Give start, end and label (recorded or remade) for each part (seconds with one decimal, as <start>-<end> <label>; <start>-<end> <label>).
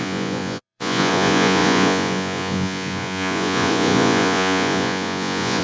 0.0-5.6 remade